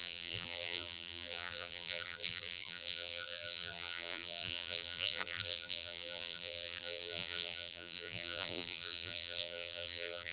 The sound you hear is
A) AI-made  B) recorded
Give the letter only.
A